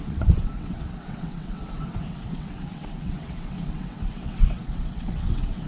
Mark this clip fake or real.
fake